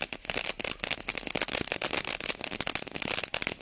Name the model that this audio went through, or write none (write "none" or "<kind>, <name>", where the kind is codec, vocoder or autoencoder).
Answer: none